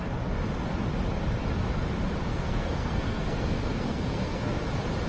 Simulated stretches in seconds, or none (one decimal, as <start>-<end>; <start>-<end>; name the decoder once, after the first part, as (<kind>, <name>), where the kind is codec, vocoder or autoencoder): 2.3-4.6 (codec, SNAC)